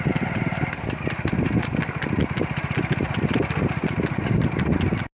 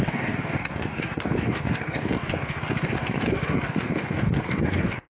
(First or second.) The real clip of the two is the first